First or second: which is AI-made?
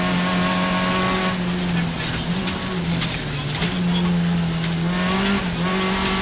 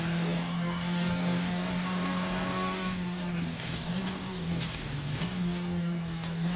second